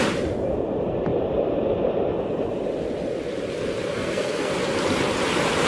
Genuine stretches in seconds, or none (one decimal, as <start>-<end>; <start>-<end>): 0.0-3.9; 4.5-5.7